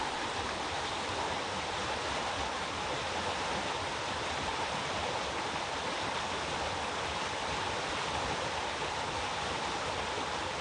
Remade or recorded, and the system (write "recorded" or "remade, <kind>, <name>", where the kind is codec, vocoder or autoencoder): recorded